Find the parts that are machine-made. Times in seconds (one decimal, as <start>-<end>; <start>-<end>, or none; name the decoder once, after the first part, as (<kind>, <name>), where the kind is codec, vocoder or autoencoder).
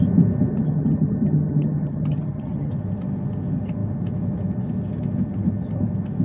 0.5-2.7 (vocoder, HiFi-GAN)